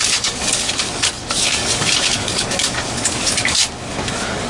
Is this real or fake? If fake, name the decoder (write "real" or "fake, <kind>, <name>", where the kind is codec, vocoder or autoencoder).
fake, codec, DAC